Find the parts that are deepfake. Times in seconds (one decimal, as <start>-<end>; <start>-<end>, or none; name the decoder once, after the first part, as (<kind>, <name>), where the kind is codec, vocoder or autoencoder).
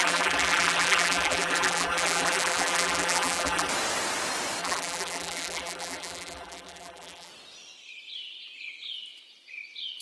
0.0-3.7 (vocoder, BigVGAN v2); 4.6-7.3